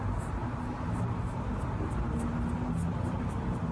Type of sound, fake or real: real